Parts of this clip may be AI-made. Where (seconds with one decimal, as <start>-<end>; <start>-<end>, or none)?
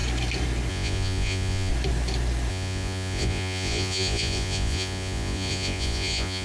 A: 0.7-1.7; 2.5-6.4